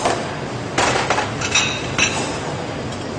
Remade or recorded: recorded